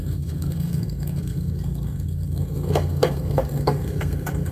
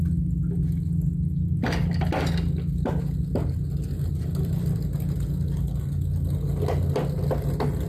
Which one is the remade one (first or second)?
first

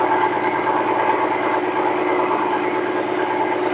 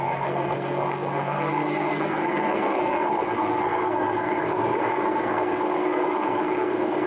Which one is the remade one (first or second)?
second